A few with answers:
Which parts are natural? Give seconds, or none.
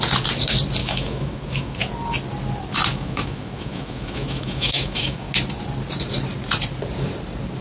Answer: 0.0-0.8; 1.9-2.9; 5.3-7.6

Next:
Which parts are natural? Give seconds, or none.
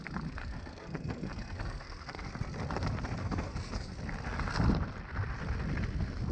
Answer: 0.0-0.4; 2.3-3.2; 3.9-6.3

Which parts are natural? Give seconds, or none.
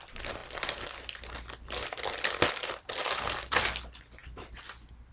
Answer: 0.0-5.1